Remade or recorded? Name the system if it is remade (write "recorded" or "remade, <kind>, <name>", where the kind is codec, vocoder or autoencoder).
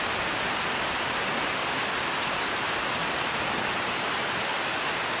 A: recorded